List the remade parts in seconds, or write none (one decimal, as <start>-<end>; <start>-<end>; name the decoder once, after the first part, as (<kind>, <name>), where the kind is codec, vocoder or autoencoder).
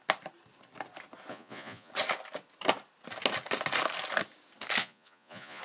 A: 1.3-1.9 (vocoder, Vocos); 4.8-5.6